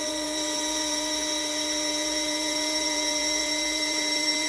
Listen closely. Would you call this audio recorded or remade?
remade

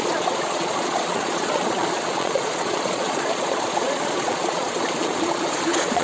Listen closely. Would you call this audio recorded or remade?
remade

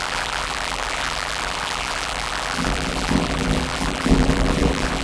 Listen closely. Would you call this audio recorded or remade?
remade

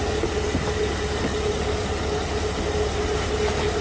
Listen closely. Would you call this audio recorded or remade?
recorded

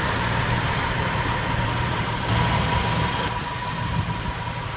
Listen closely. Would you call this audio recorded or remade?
remade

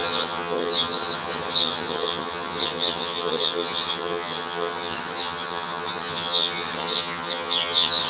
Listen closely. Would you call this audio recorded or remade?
remade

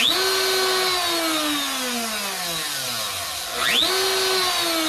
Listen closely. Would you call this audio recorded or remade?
recorded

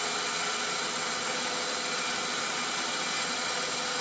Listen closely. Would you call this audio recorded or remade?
recorded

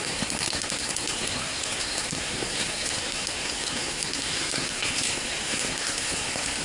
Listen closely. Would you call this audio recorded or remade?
remade